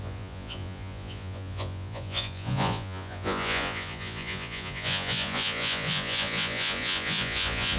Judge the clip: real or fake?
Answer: fake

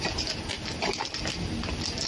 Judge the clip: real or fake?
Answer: real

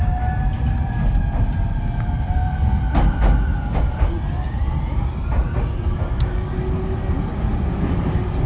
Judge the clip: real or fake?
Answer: real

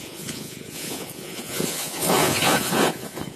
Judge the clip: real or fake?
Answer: fake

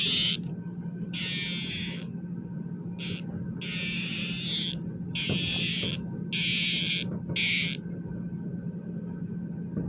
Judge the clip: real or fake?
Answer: real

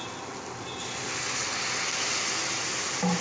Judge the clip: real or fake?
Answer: real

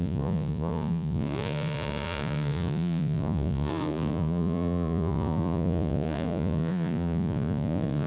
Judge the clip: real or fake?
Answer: fake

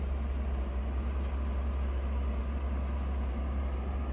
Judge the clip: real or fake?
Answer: real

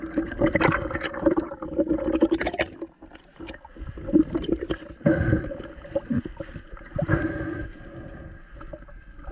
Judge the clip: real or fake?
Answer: real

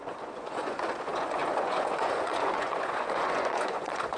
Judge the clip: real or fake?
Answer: fake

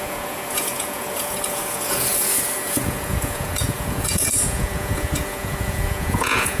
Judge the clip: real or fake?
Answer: fake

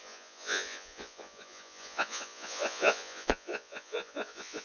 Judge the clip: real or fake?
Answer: fake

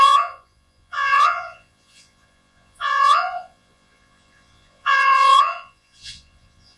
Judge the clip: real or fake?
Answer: fake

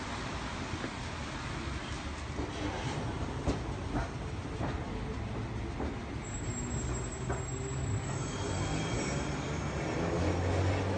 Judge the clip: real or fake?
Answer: real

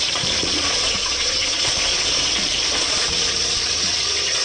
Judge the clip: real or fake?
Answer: fake